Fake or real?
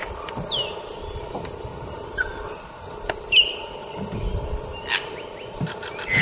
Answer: real